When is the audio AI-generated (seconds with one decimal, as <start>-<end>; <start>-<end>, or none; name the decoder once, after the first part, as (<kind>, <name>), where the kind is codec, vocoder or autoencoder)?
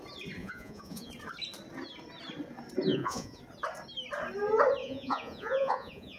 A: 0.4-1.1 (vocoder, Vocos); 2.9-3.4; 4.8-6.2